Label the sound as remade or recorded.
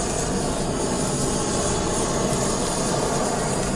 recorded